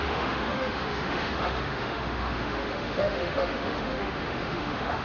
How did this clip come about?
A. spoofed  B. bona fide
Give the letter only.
A